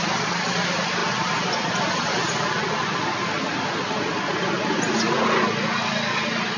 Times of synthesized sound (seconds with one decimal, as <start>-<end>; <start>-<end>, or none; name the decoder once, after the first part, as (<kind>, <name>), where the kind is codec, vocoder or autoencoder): none

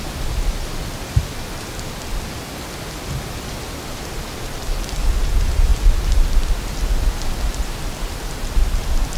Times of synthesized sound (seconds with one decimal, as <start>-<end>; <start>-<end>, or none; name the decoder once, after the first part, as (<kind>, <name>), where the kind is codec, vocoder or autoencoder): none

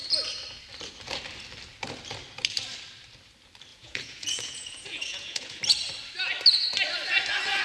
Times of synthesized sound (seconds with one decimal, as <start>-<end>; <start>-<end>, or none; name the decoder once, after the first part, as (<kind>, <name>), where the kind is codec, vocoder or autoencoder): 3.7-5.6 (vocoder, Vocos)

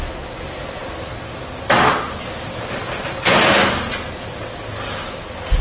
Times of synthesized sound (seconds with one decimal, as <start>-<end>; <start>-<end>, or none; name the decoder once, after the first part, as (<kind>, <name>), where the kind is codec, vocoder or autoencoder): none

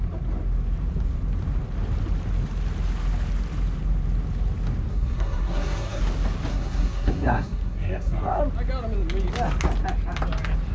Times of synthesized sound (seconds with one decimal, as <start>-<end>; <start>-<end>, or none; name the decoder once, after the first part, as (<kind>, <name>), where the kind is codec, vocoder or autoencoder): 4.9-6.0 (codec, SNAC); 6.5-8.4